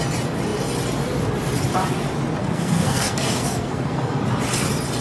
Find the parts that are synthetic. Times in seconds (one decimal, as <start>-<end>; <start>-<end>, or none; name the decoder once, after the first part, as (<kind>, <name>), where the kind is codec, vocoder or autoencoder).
2.4-4.2 (codec, SNAC)